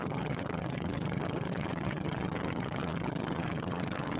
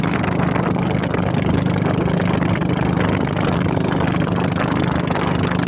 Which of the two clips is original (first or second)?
second